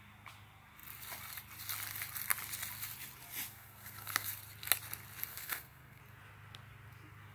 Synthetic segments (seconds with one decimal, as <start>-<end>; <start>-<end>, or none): 3.5-4.3; 5.3-6.0